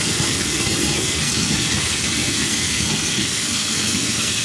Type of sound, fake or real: fake